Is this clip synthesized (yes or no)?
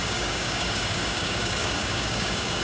yes